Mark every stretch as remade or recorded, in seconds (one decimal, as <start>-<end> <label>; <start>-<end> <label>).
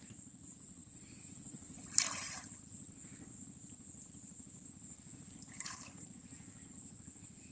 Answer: 0.0-7.5 recorded